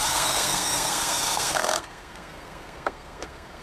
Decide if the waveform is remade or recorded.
remade